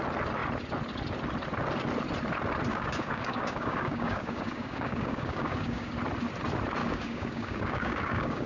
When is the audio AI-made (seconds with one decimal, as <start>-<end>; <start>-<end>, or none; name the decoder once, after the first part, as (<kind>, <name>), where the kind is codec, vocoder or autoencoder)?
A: 2.7-5.9 (codec, DAC); 6.8-8.5